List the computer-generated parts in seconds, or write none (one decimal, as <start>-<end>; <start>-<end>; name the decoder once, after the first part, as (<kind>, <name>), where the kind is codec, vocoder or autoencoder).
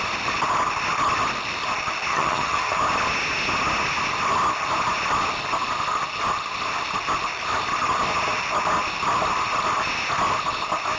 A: 2.1-2.8 (vocoder, HiFi-GAN)